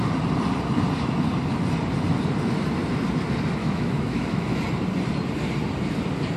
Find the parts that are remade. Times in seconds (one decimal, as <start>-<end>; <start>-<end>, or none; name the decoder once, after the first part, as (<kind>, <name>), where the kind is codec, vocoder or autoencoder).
3.6-4.6 (autoencoder, DAC-VAE)